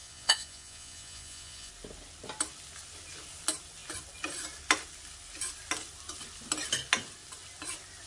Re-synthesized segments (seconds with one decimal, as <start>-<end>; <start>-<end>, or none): 0.0-1.7